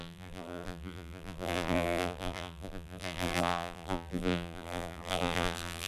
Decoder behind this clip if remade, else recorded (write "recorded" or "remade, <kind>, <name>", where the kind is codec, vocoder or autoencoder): remade, vocoder, BigVGAN v2